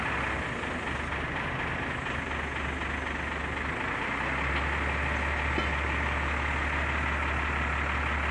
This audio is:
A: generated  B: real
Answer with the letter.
B